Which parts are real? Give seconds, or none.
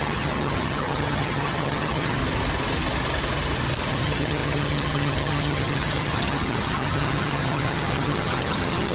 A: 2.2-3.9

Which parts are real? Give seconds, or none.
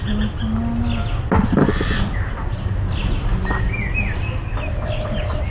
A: 0.0-5.5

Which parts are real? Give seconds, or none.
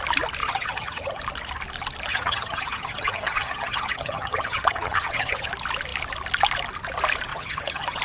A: 0.0-0.4; 1.2-2.1; 5.5-7.3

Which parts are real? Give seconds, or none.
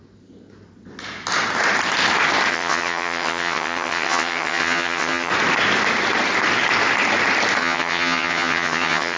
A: 0.0-2.5; 5.3-7.6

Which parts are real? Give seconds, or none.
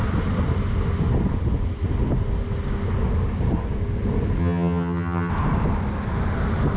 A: 0.0-4.4; 5.3-6.8